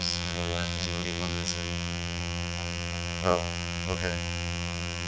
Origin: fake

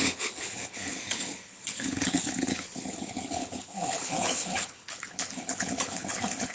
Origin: fake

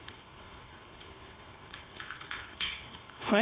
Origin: fake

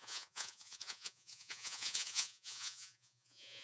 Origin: fake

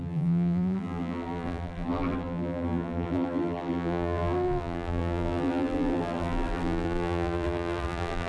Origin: fake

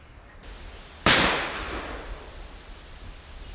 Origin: real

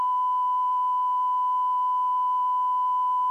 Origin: real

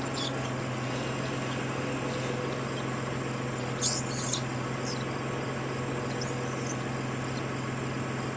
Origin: real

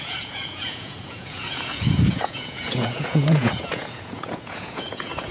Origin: fake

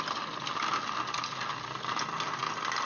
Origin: real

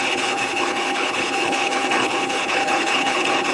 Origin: fake